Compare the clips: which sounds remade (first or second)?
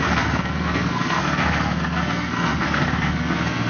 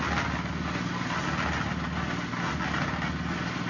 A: first